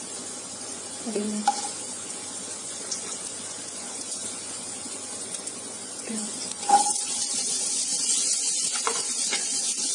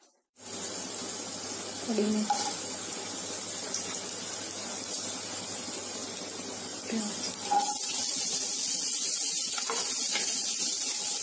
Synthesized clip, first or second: first